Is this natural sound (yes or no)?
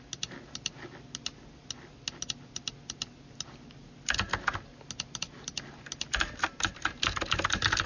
yes